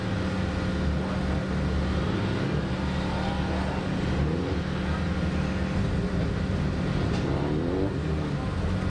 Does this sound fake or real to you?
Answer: real